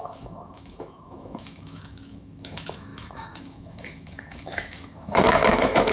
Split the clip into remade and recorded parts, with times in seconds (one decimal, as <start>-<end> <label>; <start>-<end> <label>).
0.0-5.9 remade